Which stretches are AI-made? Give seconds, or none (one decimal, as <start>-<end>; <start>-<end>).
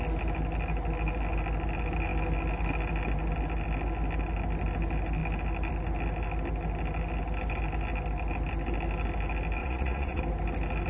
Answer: 9.6-10.2